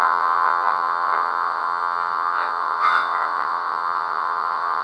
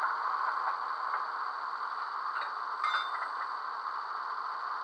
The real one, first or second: second